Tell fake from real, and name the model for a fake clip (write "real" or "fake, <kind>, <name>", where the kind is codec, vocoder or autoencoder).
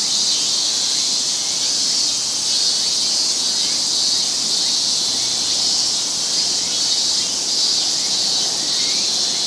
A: real